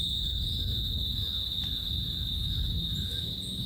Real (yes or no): yes